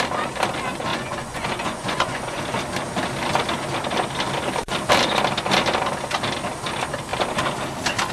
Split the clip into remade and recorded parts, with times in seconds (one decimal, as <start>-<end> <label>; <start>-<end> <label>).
0.0-0.9 recorded; 0.9-2.4 remade; 2.4-8.1 recorded